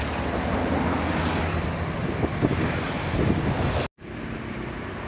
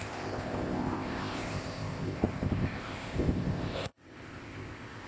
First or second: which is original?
first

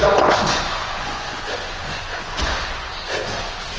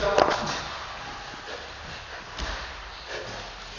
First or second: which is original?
second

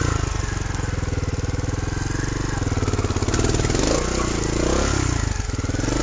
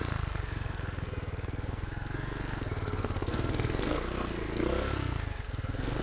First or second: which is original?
first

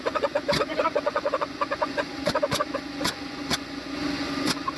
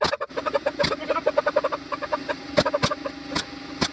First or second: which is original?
second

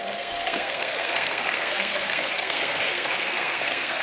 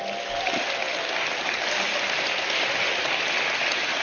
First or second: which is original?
second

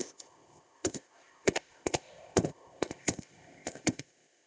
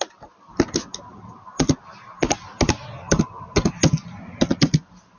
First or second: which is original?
second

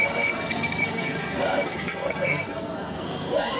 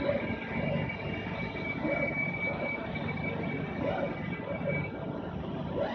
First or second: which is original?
second